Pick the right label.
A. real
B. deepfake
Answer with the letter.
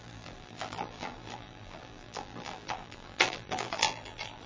B